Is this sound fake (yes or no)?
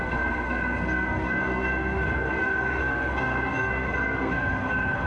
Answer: yes